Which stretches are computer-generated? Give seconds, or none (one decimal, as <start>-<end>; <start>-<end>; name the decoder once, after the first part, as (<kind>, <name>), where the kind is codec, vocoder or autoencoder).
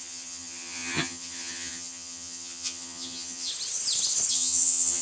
0.0-3.5 (vocoder, HiFi-GAN); 4.3-5.0